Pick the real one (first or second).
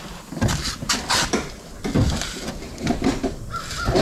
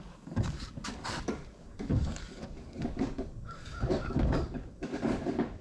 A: first